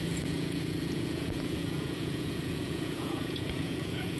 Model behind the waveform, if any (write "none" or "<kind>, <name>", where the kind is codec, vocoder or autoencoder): vocoder, Vocos